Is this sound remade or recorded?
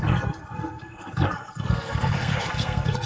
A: remade